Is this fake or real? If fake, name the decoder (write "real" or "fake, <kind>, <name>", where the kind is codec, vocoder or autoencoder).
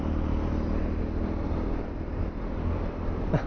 real